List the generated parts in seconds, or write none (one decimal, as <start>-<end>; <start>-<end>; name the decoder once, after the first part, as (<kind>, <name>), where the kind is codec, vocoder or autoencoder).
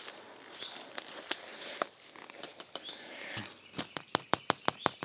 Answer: none